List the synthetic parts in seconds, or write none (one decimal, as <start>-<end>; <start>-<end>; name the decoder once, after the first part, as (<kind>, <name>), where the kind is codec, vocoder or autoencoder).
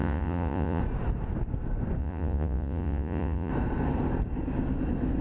0.0-0.8 (vocoder, Vocos); 2.0-3.5